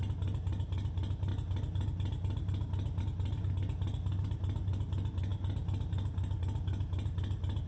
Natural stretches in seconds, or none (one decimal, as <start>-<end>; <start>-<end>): 0.0-7.7